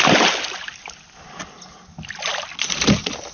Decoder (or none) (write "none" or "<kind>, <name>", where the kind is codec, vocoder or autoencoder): none